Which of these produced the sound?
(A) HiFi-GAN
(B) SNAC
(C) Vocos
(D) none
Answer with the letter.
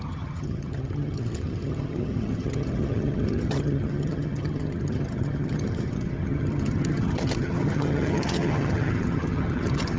A